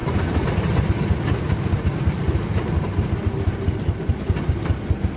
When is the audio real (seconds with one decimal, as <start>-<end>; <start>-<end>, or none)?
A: 0.0-5.2